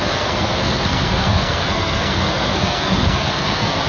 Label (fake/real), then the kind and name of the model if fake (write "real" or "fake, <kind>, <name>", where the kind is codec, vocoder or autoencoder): fake, codec, SNAC